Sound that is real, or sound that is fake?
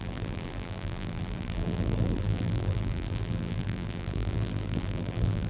fake